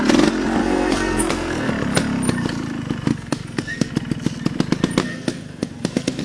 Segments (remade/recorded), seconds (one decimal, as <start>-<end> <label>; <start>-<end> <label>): 0.0-0.6 recorded; 0.6-1.7 remade; 1.7-3.1 recorded; 3.1-3.9 remade; 3.9-5.0 recorded; 5.0-6.2 remade